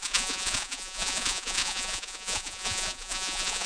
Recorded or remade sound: remade